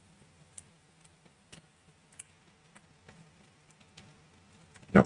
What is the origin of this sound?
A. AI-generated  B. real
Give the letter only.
B